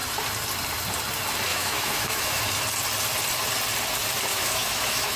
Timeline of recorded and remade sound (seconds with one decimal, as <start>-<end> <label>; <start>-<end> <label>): 0.0-1.5 recorded; 1.5-2.4 remade; 2.4-4.3 recorded; 4.3-5.2 remade